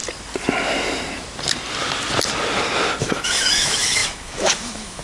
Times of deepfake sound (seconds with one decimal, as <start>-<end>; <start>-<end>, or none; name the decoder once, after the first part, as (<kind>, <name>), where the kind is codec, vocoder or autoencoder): 3.0-5.0 (autoencoder, DAC-VAE)